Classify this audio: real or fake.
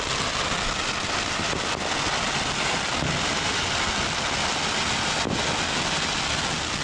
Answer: real